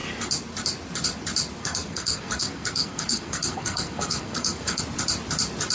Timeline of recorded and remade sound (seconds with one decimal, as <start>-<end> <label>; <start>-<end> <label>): 0.0-1.6 recorded; 1.6-4.8 remade; 4.8-5.7 recorded